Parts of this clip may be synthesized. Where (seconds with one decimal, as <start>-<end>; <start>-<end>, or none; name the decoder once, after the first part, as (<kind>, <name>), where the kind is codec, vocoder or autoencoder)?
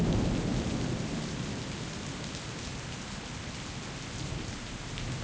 4.2-4.8 (vocoder, BigVGAN v2)